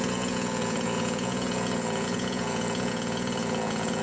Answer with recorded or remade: remade